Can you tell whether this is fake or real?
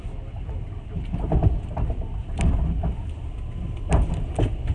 real